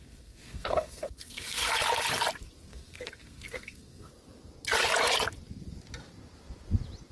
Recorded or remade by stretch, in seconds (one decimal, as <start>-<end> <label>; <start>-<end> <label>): 0.0-1.7 remade; 1.7-2.7 recorded; 2.7-4.1 remade; 4.1-7.1 recorded